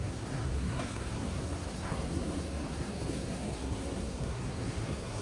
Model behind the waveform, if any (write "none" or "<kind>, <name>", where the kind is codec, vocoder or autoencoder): codec, SNAC